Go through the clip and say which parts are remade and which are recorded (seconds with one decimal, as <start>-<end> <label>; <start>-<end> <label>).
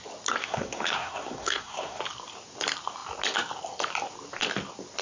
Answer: 0.0-0.4 recorded; 0.4-2.0 remade; 2.0-5.0 recorded